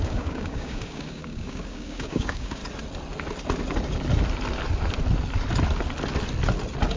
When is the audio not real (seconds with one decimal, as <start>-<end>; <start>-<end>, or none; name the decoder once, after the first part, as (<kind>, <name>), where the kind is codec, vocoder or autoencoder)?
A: 0.0-2.6 (codec, DAC)